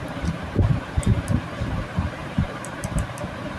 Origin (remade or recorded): remade